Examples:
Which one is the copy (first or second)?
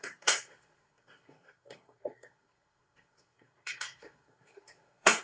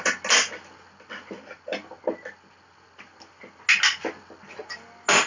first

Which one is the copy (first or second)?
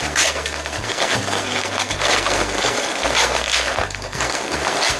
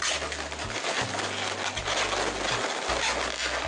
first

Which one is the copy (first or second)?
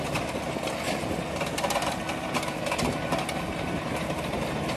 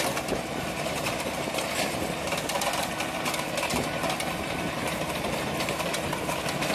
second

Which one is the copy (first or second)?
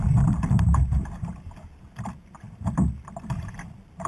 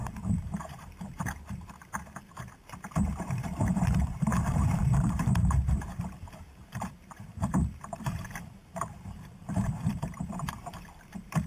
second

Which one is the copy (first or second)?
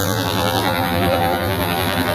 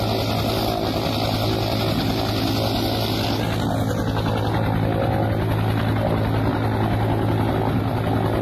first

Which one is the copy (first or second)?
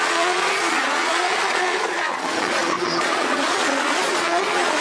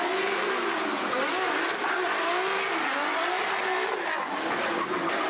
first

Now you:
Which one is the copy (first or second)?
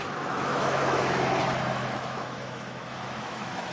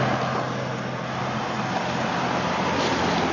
first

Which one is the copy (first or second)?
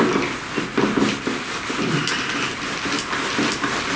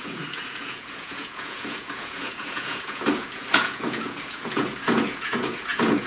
second